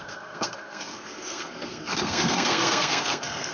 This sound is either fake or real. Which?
fake